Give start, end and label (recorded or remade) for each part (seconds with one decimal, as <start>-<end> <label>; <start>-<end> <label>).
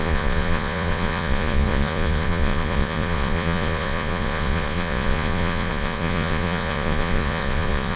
0.0-8.0 remade